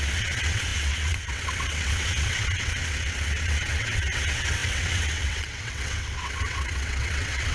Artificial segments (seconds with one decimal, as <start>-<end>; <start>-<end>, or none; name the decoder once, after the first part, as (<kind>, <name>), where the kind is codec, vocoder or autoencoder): 0.0-7.5 (vocoder, WaveNeXt)